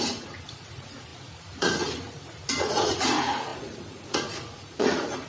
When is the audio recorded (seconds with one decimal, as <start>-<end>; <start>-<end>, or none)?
none